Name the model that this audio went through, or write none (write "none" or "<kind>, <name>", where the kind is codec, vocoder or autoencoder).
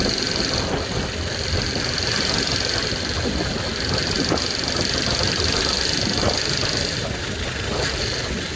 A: none